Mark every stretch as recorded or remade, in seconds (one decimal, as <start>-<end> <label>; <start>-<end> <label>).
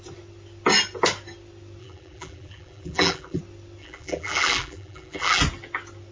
0.0-1.8 recorded; 1.8-3.4 remade; 3.4-3.8 recorded; 3.8-5.4 remade; 5.4-6.1 recorded